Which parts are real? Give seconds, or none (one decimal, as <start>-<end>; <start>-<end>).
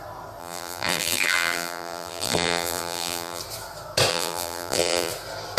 0.0-0.4; 3.4-4.1; 5.1-5.6